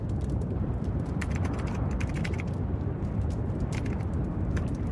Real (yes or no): yes